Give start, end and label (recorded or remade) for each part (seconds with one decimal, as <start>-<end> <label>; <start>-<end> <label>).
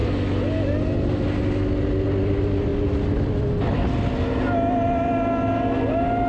0.0-6.3 recorded